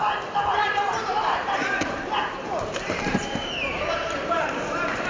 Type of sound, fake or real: fake